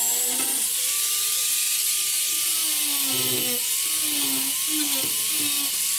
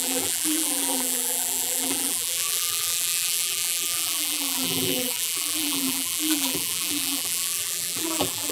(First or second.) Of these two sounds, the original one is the first